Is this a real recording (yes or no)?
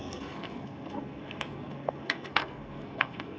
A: no